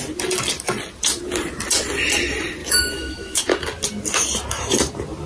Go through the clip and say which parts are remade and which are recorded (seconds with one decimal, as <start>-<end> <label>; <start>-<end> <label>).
0.0-2.6 recorded; 2.6-3.4 remade; 3.4-5.3 recorded